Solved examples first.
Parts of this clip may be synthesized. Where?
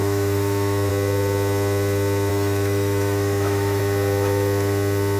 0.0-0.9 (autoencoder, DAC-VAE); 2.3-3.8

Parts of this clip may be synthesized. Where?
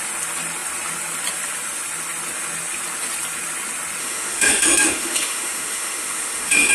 4.0-6.7 (autoencoder, DAC-VAE)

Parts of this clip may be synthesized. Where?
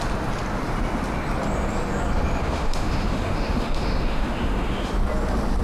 2.4-4.9 (autoencoder, DAC-VAE)